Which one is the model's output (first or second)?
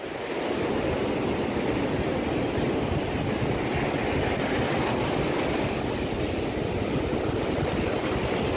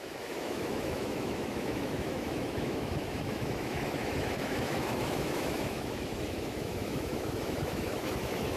second